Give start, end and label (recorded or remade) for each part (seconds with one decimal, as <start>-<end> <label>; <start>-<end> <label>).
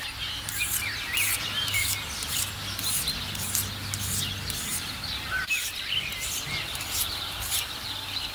0.0-4.7 recorded; 4.7-7.8 remade; 7.8-8.3 recorded